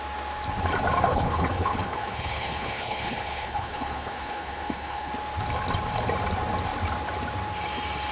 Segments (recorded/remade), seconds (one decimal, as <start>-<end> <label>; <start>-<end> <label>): 0.0-1.1 recorded; 1.1-5.1 remade; 5.1-8.1 recorded